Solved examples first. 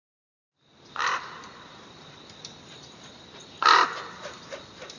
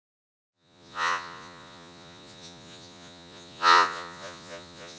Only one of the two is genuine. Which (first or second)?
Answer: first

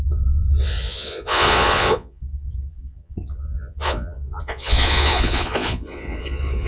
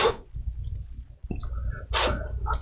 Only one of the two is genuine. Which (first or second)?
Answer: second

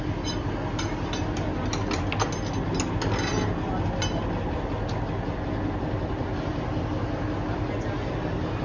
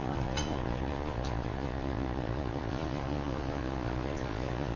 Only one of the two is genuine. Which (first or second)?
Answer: first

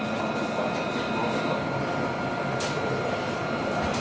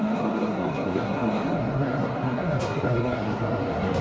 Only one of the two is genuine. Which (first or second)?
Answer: first